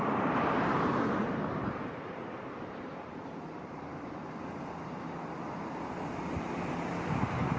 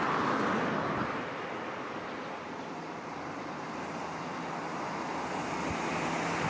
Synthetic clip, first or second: first